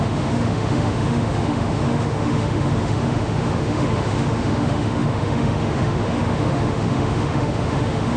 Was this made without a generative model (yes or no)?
no